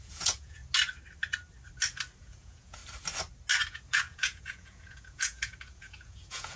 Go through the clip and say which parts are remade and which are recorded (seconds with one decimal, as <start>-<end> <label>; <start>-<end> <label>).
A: 0.0-0.6 remade; 0.6-2.2 recorded; 2.2-2.8 remade; 2.8-3.7 recorded; 3.7-6.6 remade